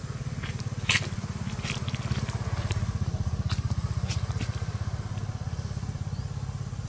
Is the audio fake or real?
real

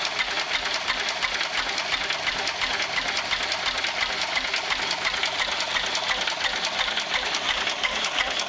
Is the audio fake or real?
real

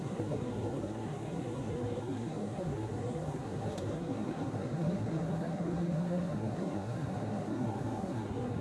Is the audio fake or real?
fake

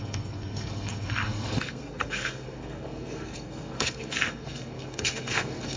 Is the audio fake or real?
fake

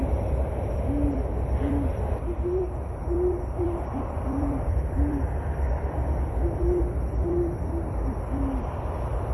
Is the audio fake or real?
fake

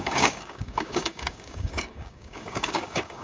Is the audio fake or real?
fake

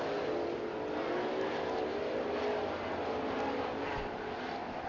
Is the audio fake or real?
real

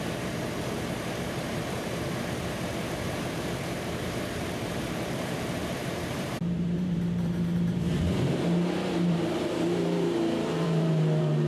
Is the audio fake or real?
fake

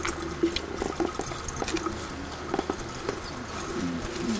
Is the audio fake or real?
real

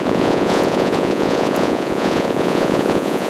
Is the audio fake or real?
fake